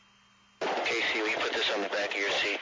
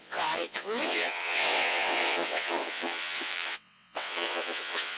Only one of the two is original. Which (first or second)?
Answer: first